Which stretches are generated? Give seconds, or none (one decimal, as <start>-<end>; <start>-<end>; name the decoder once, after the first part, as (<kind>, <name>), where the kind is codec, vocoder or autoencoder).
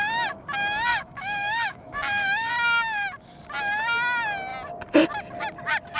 0.9-2.5 (autoencoder, DAC-VAE)